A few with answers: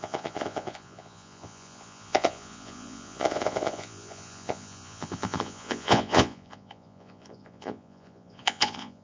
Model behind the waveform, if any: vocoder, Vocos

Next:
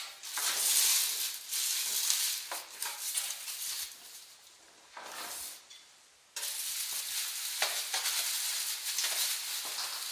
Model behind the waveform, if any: none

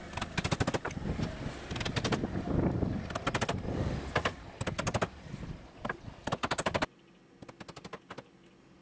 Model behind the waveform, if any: none